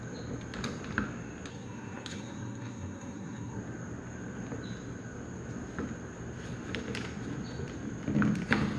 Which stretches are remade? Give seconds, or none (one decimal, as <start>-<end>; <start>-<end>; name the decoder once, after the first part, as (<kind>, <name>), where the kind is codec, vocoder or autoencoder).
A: 1.5-3.6 (codec, SNAC)